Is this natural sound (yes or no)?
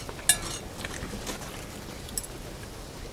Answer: yes